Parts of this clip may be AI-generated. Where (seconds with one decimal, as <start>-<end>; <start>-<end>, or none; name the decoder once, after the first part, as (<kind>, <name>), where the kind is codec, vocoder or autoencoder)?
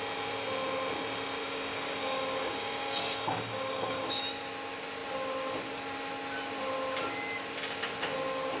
1.4-4.2 (codec, DAC)